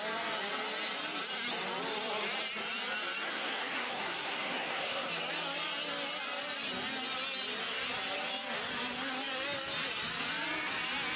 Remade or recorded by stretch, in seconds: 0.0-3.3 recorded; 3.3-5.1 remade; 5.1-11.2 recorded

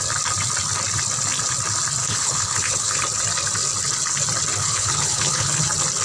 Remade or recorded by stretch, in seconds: 0.0-2.0 recorded; 2.0-3.0 remade; 3.0-4.6 recorded; 4.6-5.6 remade; 5.6-6.0 recorded